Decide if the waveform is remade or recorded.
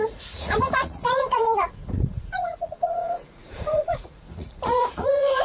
remade